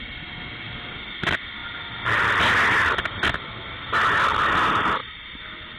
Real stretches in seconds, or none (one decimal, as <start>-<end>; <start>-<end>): 0.0-5.8